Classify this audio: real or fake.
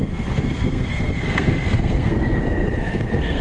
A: fake